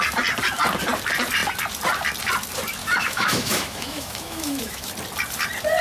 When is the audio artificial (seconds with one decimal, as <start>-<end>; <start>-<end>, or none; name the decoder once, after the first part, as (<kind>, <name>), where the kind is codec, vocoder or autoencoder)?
2.8-4.9 (autoencoder, DAC-VAE)